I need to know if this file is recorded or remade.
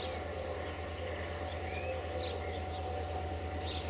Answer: recorded